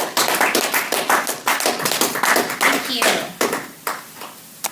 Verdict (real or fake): real